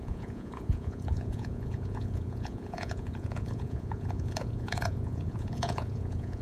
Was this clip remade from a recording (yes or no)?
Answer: yes